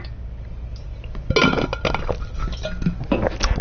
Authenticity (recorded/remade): recorded